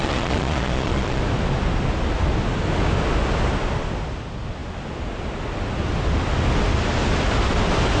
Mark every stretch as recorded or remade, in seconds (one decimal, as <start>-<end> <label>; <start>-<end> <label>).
0.0-1.2 remade; 1.2-8.0 recorded